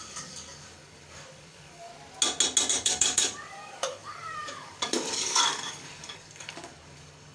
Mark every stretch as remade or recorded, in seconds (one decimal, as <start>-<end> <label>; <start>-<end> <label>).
0.0-1.9 remade; 1.9-2.7 recorded; 2.7-7.3 remade